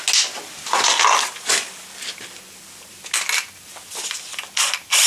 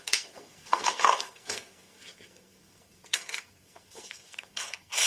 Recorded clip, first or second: first